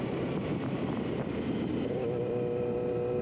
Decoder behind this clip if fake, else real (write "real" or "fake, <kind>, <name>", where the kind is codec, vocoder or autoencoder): fake, vocoder, BigVGAN v2